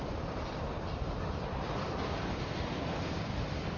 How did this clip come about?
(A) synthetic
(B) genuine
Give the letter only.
A